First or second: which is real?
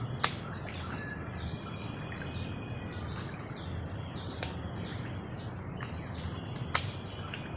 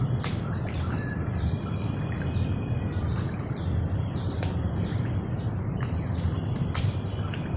first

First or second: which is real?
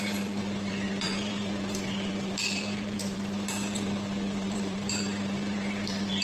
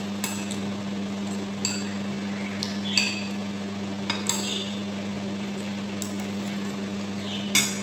second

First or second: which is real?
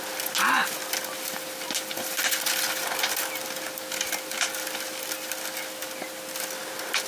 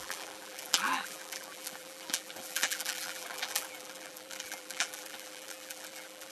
first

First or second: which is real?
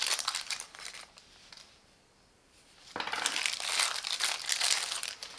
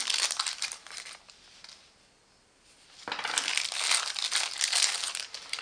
second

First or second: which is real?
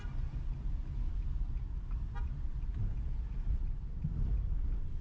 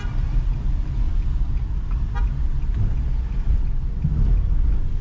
second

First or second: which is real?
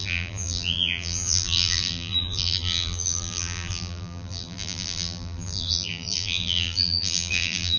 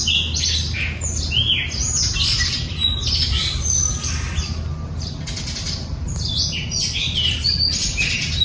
second